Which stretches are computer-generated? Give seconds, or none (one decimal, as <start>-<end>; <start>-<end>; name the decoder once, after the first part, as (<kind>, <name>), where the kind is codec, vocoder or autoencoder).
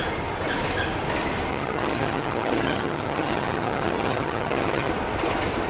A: 1.5-4.9 (vocoder, HiFi-GAN)